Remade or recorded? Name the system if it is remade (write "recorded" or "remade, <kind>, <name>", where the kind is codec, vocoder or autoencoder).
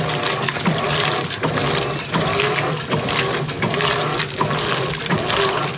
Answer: recorded